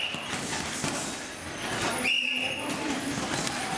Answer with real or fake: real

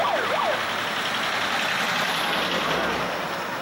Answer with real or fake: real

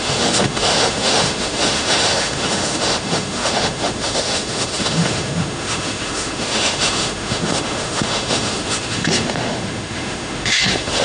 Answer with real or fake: fake